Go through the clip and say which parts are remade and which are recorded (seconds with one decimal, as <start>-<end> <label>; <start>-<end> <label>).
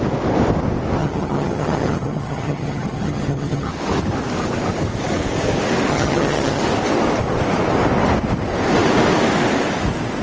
0.0-1.0 recorded; 1.0-3.7 remade; 3.7-5.9 recorded; 5.9-6.6 remade; 6.6-10.2 recorded